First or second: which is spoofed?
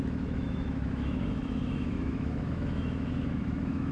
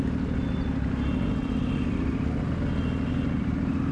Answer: first